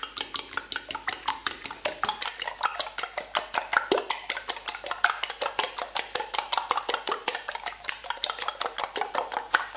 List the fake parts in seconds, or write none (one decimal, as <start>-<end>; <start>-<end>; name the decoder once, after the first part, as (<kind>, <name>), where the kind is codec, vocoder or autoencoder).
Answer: 1.4-1.9 (vocoder, BigVGAN v2); 7.2-9.1

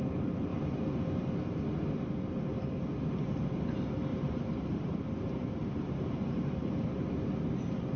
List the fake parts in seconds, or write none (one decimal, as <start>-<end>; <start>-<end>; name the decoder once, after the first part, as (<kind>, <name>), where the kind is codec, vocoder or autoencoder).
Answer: 4.1-7.1 (vocoder, BigVGAN v2)

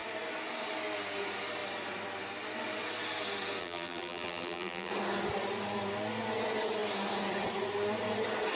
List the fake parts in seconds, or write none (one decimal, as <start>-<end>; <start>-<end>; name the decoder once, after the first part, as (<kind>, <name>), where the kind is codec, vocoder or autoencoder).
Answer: 3.6-4.9 (vocoder, BigVGAN v2)

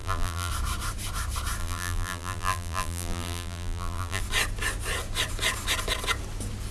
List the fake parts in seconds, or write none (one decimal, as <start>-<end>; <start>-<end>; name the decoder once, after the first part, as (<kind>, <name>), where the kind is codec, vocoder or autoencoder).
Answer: 0.0-0.5 (vocoder, BigVGAN v2); 1.6-4.2

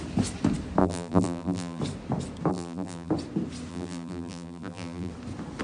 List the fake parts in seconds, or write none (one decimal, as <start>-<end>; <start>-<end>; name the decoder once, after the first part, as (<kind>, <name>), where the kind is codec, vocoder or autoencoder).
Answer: 0.8-1.8 (vocoder, BigVGAN v2); 2.5-3.1; 3.7-5.1